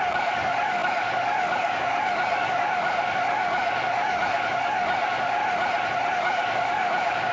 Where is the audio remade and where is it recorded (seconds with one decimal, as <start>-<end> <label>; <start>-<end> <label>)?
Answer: 0.0-5.4 remade; 5.4-6.1 recorded; 6.1-7.3 remade